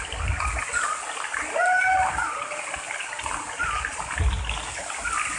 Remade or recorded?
recorded